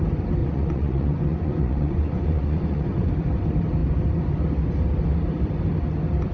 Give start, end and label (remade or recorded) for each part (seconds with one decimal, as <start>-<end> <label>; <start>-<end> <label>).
0.0-0.4 recorded; 0.4-3.1 remade; 3.1-6.3 recorded